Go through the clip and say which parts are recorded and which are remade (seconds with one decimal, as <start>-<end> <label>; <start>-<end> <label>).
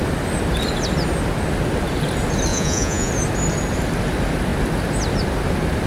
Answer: 0.0-2.5 recorded; 2.5-3.1 remade; 3.1-5.9 recorded